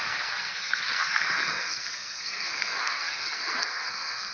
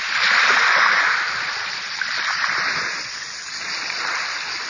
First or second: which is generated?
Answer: first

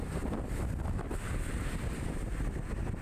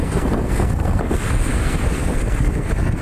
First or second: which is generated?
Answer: second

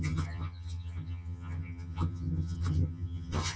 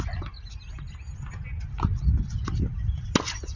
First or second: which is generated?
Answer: first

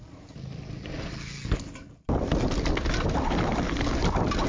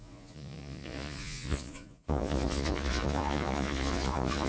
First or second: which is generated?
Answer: second